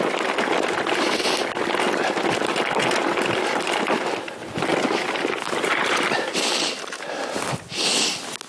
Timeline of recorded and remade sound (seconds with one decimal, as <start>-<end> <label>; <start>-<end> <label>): 0.0-8.5 recorded